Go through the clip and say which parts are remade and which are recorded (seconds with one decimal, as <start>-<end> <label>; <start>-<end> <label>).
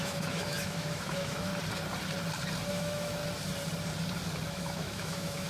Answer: 0.0-1.5 remade; 1.5-2.7 recorded; 2.7-3.2 remade; 3.2-4.5 recorded; 4.5-5.5 remade